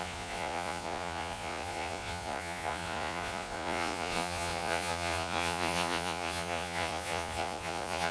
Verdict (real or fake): fake